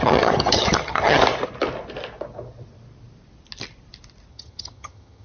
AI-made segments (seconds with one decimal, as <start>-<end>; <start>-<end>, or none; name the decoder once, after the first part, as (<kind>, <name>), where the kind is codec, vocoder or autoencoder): 0.0-1.2 (vocoder, HiFi-GAN); 4.3-5.2

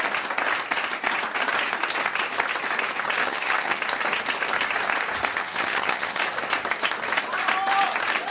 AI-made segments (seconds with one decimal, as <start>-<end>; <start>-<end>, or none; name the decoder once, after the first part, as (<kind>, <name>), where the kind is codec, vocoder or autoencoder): 3.2-3.8 (vocoder, HiFi-GAN); 5.4-6.2